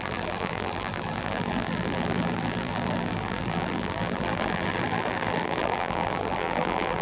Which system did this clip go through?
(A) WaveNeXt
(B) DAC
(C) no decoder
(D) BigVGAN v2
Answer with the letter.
D